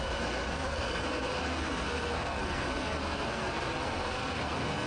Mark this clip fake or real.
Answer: fake